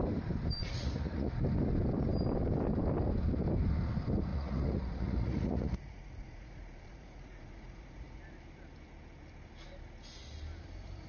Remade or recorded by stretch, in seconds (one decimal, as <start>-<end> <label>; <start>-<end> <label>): 0.0-0.6 recorded; 0.6-1.3 remade; 1.3-4.3 recorded; 4.3-8.2 remade; 8.2-11.1 recorded